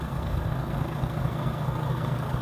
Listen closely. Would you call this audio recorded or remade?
remade